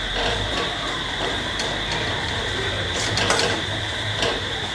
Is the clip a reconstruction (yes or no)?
yes